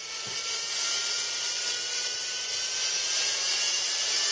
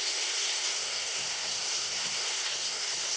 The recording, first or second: first